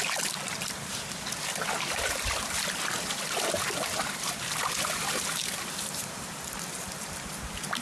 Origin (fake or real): real